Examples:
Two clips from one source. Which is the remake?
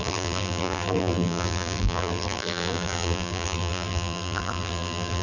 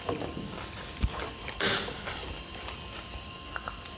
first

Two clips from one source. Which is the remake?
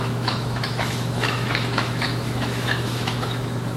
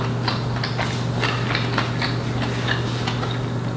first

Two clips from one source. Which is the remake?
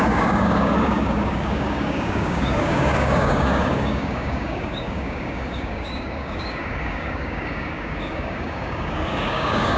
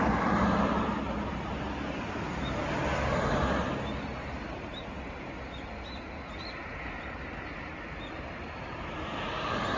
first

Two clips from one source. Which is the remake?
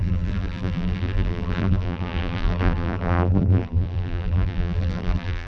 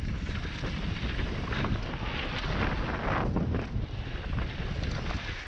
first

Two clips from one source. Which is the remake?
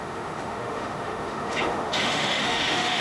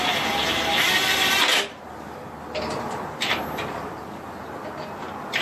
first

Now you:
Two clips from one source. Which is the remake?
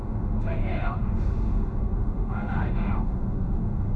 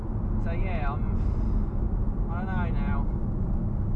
first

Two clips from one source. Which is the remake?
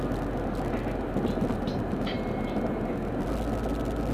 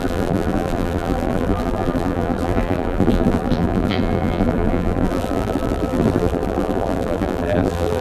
second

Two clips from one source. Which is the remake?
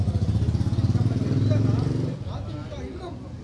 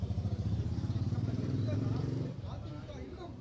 second